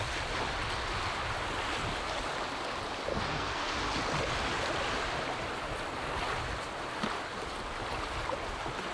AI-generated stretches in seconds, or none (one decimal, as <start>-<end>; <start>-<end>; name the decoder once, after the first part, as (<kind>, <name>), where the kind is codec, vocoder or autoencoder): 3.1-3.7 (codec, SNAC)